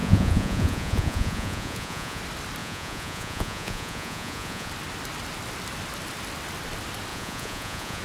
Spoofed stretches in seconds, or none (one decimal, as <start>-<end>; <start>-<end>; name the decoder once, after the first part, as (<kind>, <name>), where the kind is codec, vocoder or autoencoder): 0.0-2.2 (vocoder, Vocos); 2.6-4.7; 7.1-8.0